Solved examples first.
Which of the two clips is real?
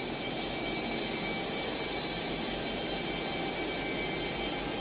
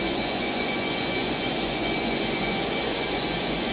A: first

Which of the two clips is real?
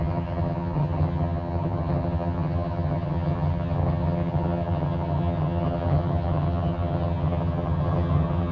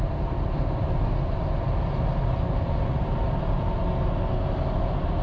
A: second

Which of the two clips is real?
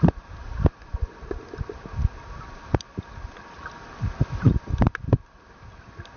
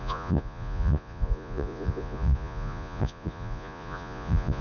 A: first